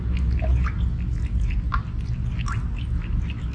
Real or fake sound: real